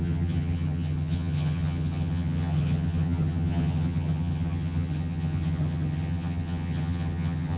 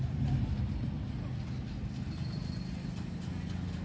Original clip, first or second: second